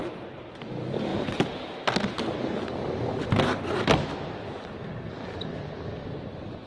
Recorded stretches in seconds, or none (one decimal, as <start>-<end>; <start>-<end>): 0.0-6.0